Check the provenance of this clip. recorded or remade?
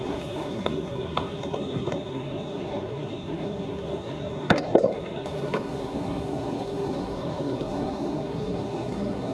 remade